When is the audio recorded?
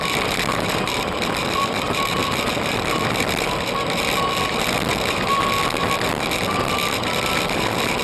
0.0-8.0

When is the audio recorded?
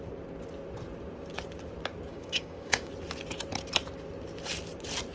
0.0-2.1; 2.9-5.1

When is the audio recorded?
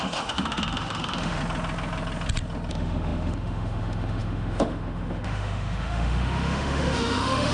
1.4-2.7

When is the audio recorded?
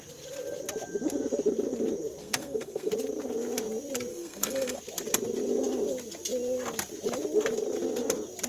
0.0-2.2; 2.9-4.1; 4.8-8.5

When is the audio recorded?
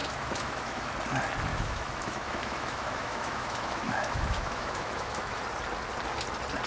0.9-1.5; 5.4-6.7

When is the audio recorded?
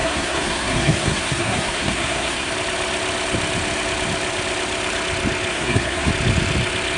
2.5-5.5; 6.1-7.0